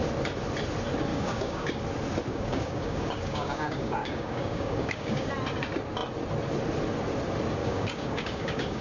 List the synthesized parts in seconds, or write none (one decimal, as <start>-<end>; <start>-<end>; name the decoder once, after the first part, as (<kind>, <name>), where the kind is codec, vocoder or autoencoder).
1.1-1.8 (codec, DAC); 2.3-5.3; 7.6-8.8